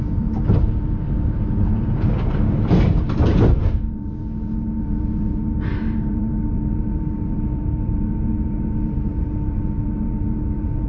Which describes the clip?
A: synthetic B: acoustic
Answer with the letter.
A